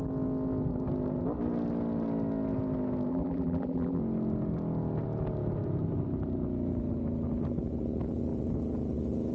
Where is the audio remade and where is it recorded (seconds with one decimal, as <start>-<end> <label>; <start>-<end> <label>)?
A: 0.0-3.1 recorded; 3.1-4.0 remade; 4.0-9.3 recorded